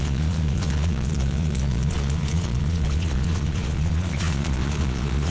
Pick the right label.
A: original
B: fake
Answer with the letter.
B